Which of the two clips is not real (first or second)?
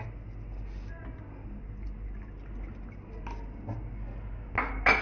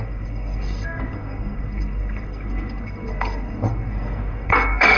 second